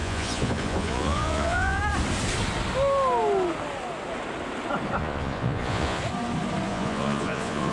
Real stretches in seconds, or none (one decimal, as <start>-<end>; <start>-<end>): 1.8-5.0; 6.0-6.7